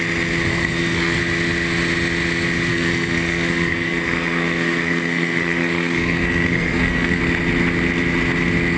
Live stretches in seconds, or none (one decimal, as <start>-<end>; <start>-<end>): 0.0-0.5; 1.2-2.7; 7.2-8.8